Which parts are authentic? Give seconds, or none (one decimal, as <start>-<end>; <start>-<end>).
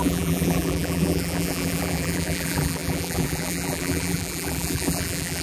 none